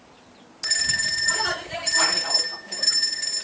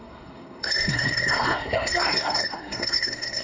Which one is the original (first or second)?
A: first